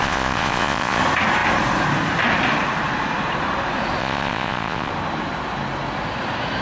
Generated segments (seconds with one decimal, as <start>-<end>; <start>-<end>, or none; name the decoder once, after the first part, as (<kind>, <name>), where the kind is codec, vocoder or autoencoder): 0.0-1.0 (vocoder, Vocos); 4.0-4.9